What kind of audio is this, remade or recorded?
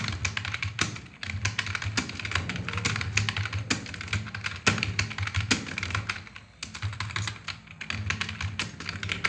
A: recorded